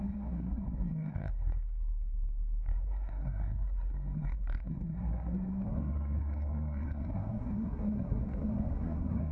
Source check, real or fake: fake